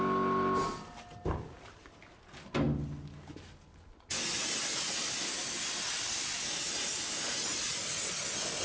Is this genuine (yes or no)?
yes